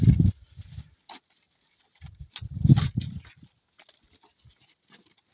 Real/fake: real